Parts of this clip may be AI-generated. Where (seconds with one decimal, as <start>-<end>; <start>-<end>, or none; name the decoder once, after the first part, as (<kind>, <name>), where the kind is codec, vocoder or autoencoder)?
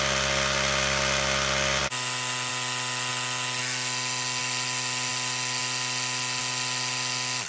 none